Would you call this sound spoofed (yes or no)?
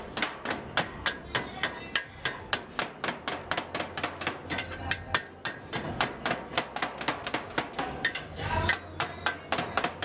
no